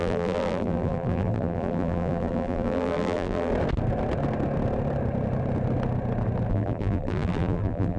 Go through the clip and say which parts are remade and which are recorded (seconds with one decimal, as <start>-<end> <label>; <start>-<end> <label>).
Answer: 0.0-3.5 remade; 3.5-6.5 recorded; 6.5-8.0 remade

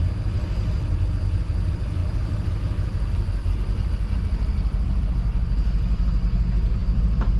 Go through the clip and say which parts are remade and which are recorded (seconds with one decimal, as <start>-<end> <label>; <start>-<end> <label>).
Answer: 0.0-7.4 recorded